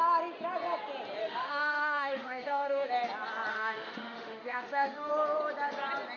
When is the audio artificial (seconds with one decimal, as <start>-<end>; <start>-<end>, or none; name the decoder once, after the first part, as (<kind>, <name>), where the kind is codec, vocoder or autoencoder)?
1.2-2.9 (autoencoder, DAC-VAE); 3.5-5.1